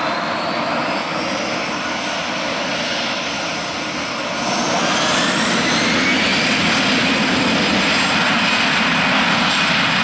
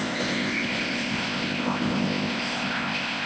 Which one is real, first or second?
first